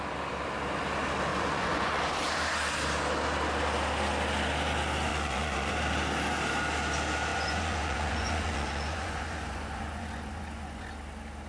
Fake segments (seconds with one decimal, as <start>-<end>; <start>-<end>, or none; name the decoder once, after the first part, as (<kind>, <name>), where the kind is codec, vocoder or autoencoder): 1.3-2.0 (vocoder, Vocos); 5.1-5.7; 7.3-10.9